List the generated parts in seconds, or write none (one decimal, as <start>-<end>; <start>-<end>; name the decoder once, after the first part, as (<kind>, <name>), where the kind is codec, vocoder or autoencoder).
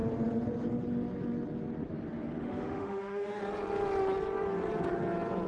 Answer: 2.4-3.4 (autoencoder, DAC-VAE)